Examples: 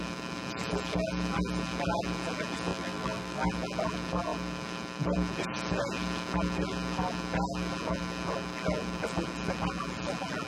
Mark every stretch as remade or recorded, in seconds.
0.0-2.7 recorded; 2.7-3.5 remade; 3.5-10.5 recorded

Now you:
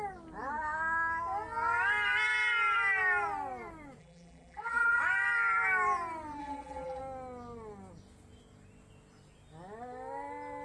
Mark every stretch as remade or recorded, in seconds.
0.0-4.0 recorded; 4.0-5.0 remade; 5.0-6.4 recorded; 6.4-7.0 remade; 7.0-10.6 recorded

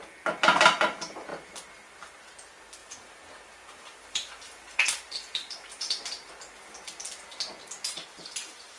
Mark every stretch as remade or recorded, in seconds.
0.0-2.8 recorded; 2.8-6.3 remade; 6.3-8.8 recorded

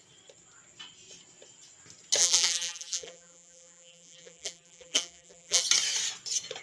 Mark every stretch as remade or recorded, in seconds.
0.0-2.2 recorded; 2.2-5.6 remade; 5.6-6.6 recorded

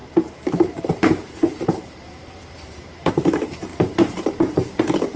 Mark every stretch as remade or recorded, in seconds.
0.0-3.1 remade; 3.1-3.7 recorded; 3.7-4.8 remade; 4.8-5.2 recorded

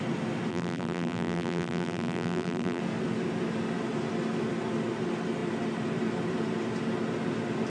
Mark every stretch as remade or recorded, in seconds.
0.0-0.5 recorded; 0.5-2.8 remade; 2.8-7.7 recorded